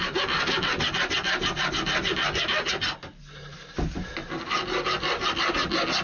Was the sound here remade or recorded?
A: recorded